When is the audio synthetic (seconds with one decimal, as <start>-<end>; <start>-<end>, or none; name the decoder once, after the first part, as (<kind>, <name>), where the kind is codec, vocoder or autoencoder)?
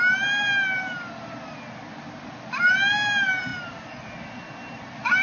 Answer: none